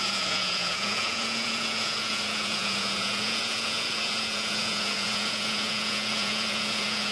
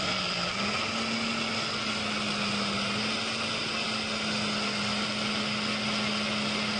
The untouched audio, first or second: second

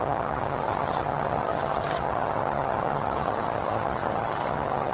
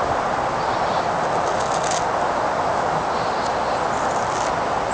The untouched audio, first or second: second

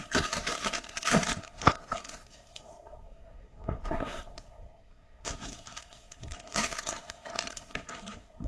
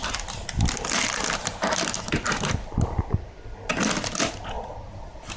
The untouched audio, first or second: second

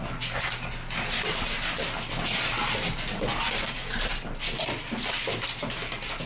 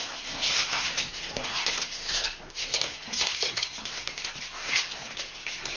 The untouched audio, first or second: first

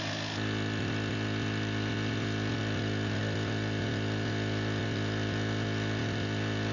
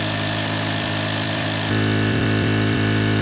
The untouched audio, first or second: first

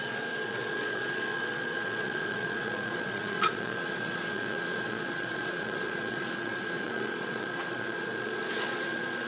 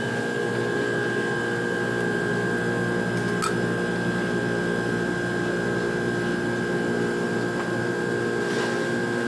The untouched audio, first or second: second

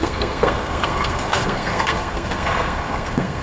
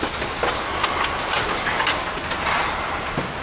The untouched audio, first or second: second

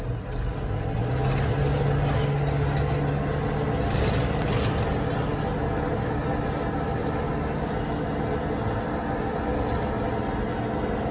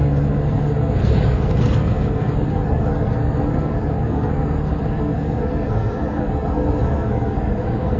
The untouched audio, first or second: first